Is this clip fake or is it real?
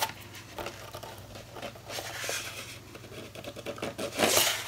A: real